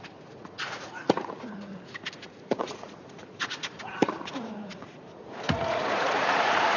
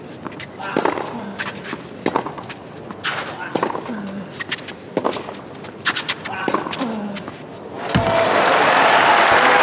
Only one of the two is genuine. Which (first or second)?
second